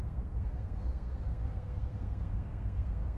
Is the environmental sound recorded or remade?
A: remade